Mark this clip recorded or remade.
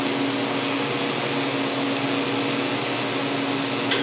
recorded